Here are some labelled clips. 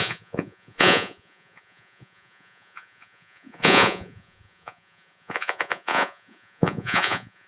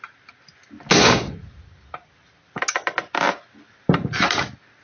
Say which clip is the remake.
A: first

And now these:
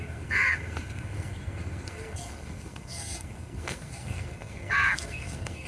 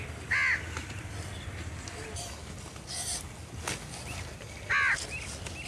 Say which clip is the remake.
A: first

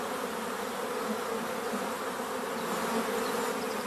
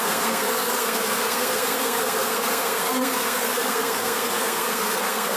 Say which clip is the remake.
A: second